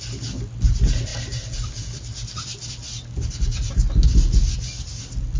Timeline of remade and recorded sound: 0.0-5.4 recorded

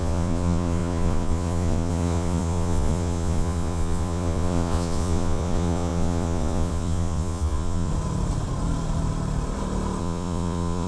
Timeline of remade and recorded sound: 0.0-7.9 remade; 7.9-10.0 recorded; 10.0-10.9 remade

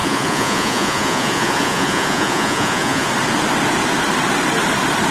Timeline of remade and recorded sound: 0.0-3.1 remade; 3.1-5.1 recorded

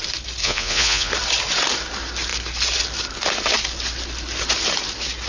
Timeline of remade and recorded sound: 0.0-0.4 recorded; 0.4-1.1 remade; 1.1-5.3 recorded